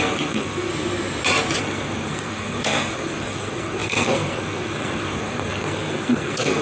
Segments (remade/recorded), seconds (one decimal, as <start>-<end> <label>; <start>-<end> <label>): 0.0-0.7 remade; 0.7-1.6 recorded; 1.6-6.6 remade